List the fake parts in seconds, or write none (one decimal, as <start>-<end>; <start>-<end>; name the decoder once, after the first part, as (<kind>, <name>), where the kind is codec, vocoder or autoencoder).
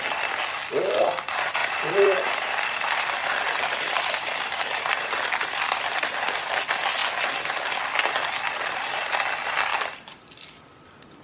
1.6-5.1 (vocoder, BigVGAN v2); 9.7-11.2